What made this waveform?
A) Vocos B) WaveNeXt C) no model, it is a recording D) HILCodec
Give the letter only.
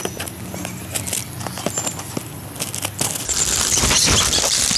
C